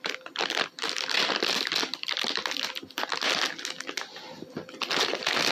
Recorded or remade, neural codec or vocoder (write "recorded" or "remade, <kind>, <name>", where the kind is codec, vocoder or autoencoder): recorded